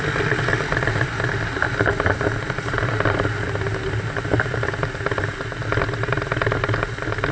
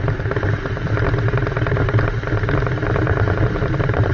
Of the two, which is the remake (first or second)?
second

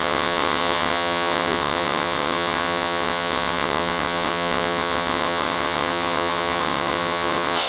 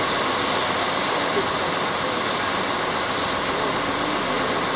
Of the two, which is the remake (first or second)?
first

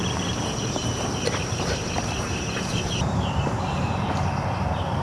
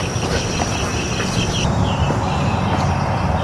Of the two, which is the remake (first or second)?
first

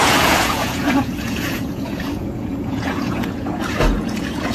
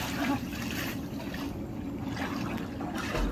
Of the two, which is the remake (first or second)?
first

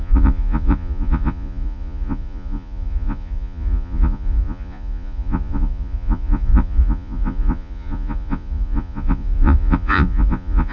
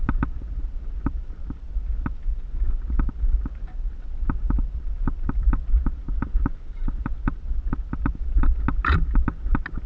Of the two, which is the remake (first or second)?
first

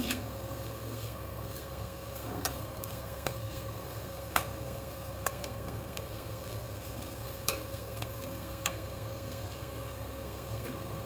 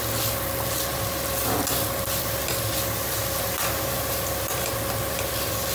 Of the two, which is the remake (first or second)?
first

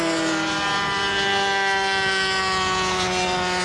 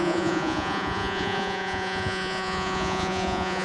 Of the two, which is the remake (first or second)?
second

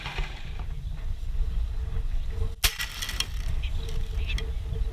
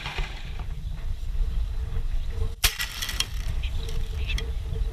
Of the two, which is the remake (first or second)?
second